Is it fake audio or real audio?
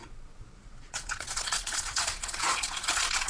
fake